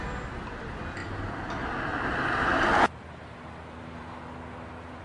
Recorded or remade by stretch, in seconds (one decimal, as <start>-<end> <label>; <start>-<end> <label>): 0.0-5.0 recorded